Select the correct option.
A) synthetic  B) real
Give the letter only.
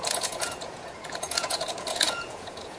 A